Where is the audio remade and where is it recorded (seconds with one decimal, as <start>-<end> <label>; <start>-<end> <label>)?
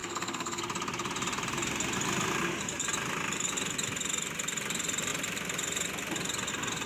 0.0-0.6 remade; 0.6-6.9 recorded